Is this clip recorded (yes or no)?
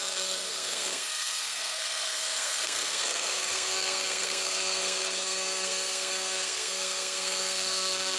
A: no